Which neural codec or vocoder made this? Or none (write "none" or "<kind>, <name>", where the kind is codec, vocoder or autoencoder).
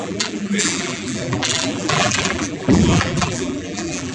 vocoder, BigVGAN v2